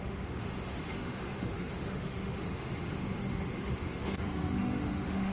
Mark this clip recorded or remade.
remade